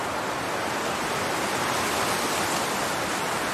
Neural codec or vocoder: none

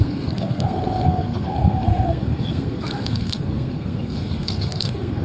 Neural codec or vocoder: codec, SNAC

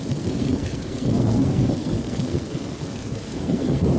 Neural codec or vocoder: codec, SNAC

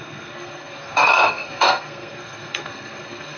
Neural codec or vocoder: codec, SNAC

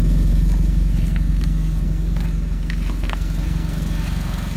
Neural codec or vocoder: codec, SNAC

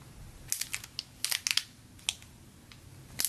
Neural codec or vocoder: none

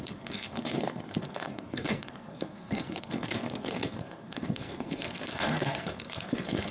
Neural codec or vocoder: codec, SNAC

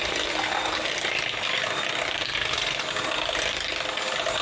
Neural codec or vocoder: none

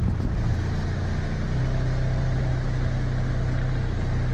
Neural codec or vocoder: none